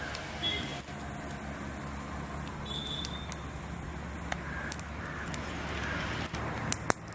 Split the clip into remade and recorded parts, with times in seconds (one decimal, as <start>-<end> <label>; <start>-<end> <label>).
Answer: 0.0-7.1 recorded